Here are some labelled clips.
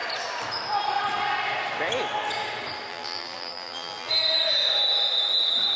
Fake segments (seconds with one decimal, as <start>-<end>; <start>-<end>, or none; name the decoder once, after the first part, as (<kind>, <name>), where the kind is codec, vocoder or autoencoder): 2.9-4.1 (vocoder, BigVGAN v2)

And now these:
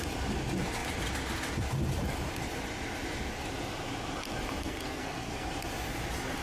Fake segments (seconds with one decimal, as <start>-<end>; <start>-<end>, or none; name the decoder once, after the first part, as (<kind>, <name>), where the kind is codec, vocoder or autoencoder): 4.6-5.5 (codec, SNAC)

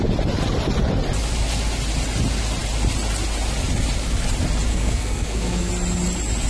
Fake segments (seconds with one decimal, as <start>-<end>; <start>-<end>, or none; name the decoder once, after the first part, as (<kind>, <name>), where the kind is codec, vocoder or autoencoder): 4.7-5.7 (codec, SNAC)